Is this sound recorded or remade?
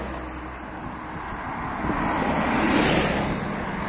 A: recorded